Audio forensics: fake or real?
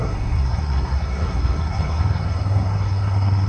fake